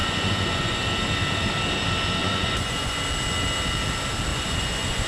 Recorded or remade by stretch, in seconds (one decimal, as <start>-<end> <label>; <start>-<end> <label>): 0.0-0.8 remade; 0.8-2.2 recorded; 2.2-3.0 remade; 3.0-4.3 recorded; 4.3-5.1 remade